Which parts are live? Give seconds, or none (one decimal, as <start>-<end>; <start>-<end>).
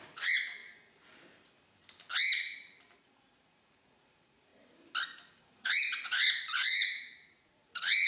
0.6-3.0; 4.5-5.4